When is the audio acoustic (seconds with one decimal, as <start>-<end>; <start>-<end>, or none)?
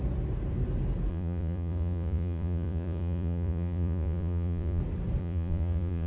0.0-1.1; 4.8-5.2